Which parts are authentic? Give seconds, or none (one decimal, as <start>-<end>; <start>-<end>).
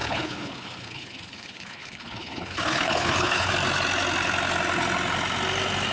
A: 3.5-5.9